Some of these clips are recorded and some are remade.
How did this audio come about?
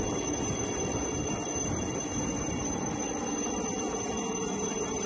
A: recorded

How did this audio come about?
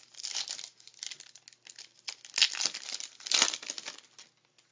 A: recorded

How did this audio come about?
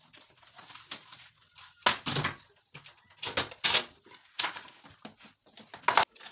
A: recorded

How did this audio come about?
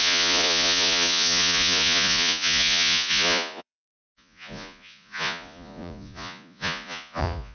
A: remade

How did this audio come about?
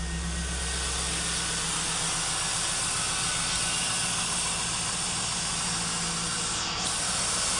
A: recorded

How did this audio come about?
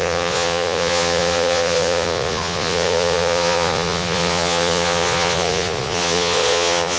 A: remade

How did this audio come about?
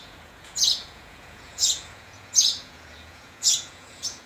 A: remade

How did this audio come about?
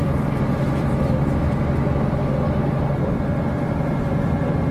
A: recorded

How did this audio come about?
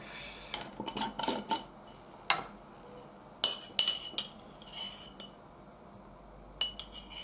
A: recorded